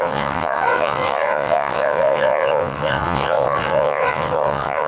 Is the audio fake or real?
fake